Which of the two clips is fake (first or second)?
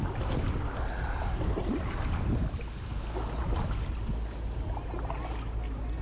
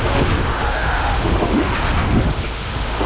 second